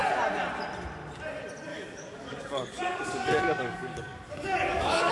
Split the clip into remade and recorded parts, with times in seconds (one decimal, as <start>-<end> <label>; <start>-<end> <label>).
0.0-1.7 recorded; 1.7-5.1 remade